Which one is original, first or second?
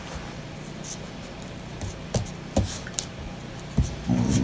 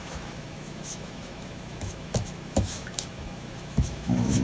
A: first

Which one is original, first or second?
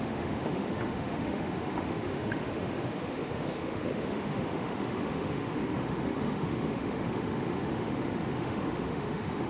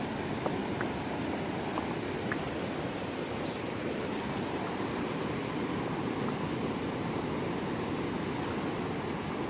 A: second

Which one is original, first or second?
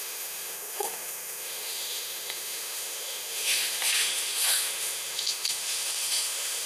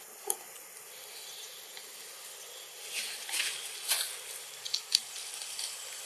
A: second